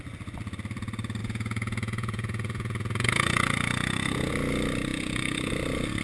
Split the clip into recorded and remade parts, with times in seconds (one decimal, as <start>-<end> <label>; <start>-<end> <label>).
0.0-1.2 recorded; 1.2-4.3 remade; 4.3-4.9 recorded; 4.9-5.5 remade; 5.5-6.0 recorded